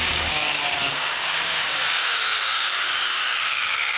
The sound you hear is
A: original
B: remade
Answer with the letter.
B